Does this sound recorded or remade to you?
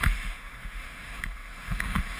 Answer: remade